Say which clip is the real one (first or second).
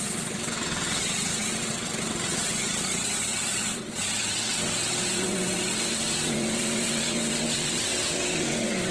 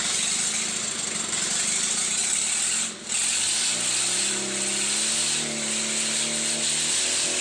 second